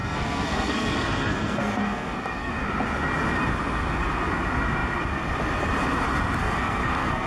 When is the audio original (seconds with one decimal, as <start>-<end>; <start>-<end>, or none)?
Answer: 2.5-6.4